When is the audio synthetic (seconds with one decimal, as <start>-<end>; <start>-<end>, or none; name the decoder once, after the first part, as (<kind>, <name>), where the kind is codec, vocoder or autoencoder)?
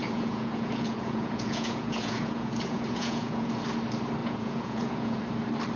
0.0-3.5 (vocoder, Vocos); 4.2-5.2